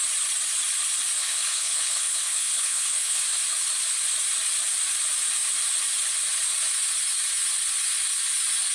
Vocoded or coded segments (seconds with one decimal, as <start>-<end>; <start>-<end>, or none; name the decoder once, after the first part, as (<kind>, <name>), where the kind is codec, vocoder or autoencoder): 1.2-3.2 (codec, HILCodec)